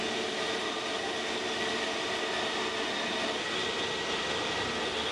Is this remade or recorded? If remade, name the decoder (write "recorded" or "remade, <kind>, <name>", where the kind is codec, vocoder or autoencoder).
recorded